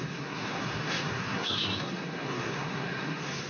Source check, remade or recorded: remade